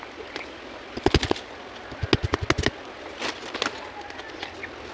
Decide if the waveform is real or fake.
real